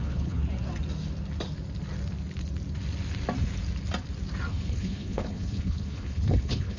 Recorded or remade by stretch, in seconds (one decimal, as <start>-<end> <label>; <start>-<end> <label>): 0.0-0.4 remade; 0.4-4.5 recorded; 4.5-6.8 remade